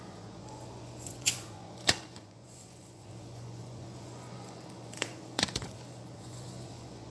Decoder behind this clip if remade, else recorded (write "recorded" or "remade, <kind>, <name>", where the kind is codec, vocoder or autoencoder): remade, vocoder, Vocos